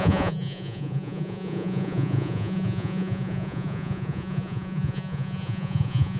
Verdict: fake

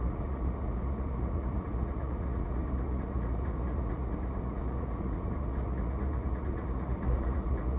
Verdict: fake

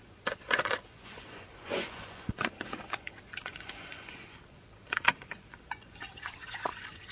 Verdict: fake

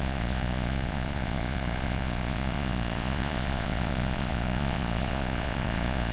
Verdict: fake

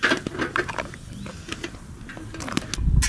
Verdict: real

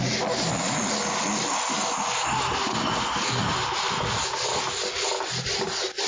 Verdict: real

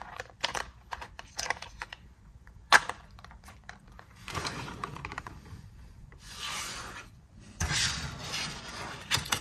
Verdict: fake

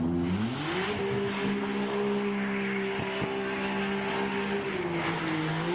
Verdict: real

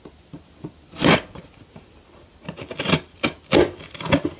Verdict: real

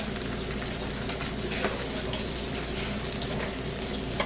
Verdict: real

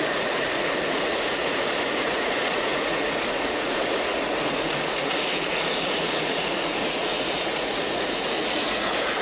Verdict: fake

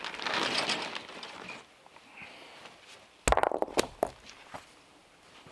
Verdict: real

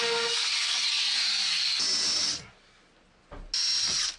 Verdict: real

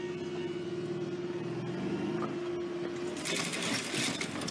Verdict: real